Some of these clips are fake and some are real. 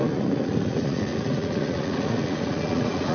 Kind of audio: fake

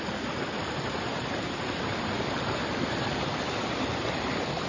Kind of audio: real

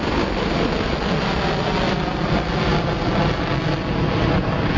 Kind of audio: real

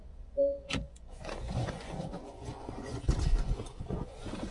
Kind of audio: fake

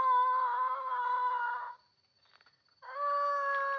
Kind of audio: real